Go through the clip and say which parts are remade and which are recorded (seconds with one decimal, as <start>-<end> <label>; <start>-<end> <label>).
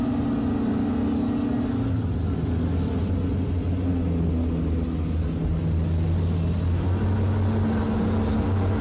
0.0-8.8 recorded